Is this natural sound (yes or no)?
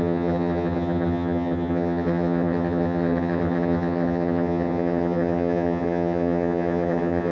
no